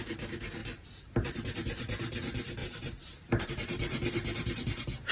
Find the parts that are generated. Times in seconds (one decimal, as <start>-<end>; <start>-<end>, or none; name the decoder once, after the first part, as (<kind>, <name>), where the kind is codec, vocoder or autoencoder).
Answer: 2.6-5.1 (vocoder, BigVGAN v2)